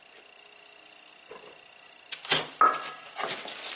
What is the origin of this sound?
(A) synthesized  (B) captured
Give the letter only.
B